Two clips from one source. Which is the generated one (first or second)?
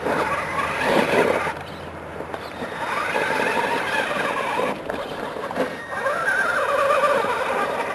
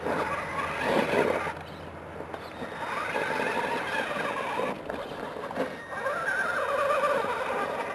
first